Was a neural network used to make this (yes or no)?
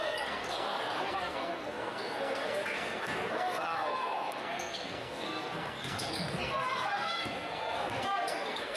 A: yes